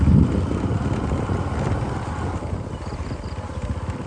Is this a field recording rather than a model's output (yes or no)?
yes